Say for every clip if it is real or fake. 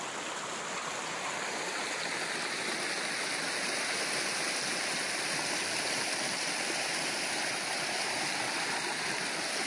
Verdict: real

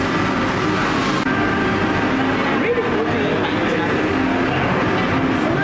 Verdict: real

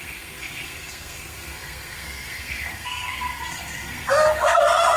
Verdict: fake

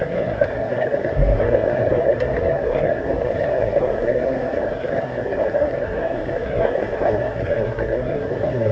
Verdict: fake